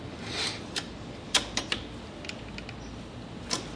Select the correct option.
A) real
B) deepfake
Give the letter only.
A